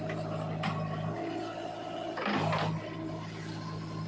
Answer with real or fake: real